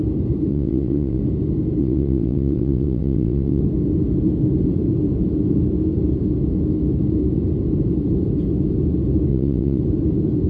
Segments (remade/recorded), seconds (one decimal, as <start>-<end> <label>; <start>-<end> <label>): 0.0-0.5 recorded; 0.5-1.2 remade; 1.2-1.8 recorded; 1.8-3.6 remade; 3.6-9.3 recorded; 9.3-9.8 remade; 9.8-10.5 recorded